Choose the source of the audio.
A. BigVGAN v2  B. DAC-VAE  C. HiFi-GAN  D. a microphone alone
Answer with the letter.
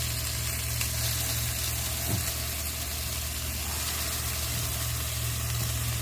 D